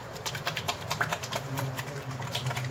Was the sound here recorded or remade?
remade